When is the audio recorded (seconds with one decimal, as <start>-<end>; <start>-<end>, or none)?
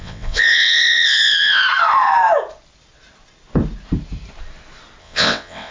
1.6-5.0